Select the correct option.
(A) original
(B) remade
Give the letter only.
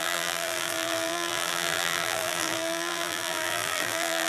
B